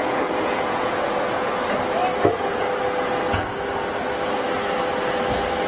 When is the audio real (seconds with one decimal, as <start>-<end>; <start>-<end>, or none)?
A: 1.5-5.7